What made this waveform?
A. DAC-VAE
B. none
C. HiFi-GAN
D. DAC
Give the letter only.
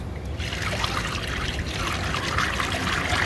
B